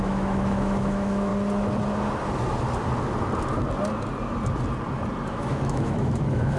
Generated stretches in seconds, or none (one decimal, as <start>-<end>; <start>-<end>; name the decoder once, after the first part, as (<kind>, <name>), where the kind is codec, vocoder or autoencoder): 0.0-1.3 (autoencoder, DAC-VAE); 5.3-6.6